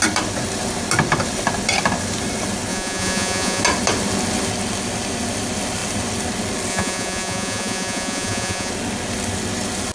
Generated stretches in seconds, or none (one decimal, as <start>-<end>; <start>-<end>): 2.7-3.6; 6.7-8.7